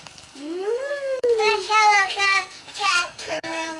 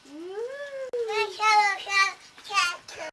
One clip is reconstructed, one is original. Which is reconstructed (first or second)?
first